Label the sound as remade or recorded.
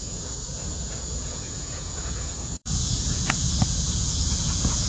remade